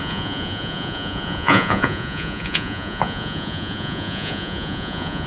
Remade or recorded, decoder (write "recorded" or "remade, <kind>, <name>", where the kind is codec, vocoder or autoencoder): remade, vocoder, Vocos